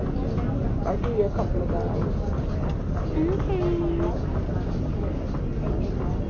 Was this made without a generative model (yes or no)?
yes